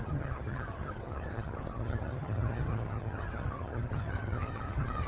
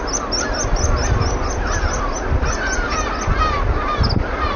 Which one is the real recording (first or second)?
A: second